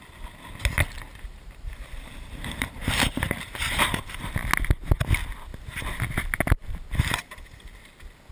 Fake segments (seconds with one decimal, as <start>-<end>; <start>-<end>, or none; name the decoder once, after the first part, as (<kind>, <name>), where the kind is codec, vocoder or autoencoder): 1.1-4.5 (vocoder, BigVGAN v2)